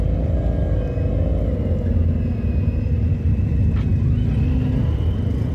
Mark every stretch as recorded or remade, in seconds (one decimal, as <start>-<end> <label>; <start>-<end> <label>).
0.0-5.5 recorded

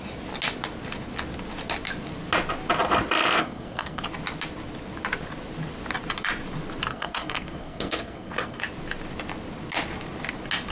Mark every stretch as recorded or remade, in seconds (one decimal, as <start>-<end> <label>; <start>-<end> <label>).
0.0-3.4 recorded; 3.4-4.0 remade; 4.0-6.9 recorded; 6.9-8.6 remade; 8.6-10.7 recorded

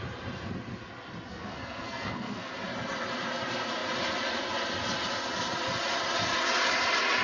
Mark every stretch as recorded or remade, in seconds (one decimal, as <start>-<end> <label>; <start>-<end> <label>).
0.0-1.3 recorded; 1.3-2.5 remade; 2.5-7.2 recorded